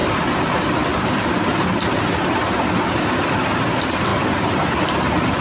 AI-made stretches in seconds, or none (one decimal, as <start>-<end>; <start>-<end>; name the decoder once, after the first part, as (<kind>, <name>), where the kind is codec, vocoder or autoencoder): none